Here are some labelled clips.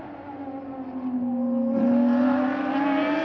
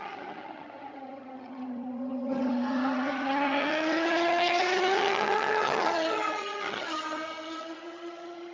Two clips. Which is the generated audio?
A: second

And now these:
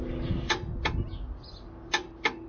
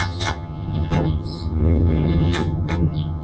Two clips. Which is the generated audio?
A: second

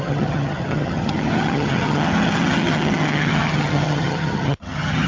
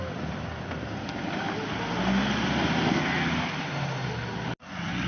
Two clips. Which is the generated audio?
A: first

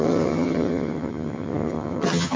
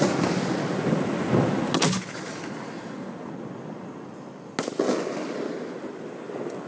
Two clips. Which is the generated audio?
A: first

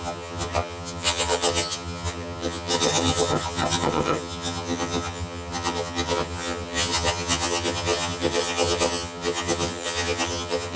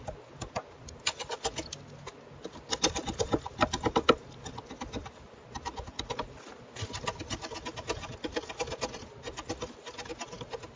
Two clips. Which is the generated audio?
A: first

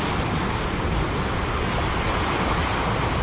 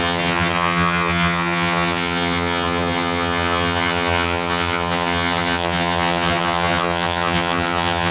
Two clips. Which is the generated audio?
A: second